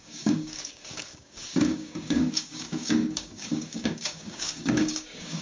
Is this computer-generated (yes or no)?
yes